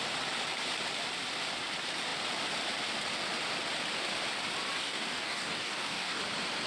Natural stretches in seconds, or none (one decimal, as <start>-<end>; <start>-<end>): 0.0-4.8; 6.2-6.7